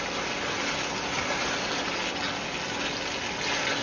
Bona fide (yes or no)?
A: yes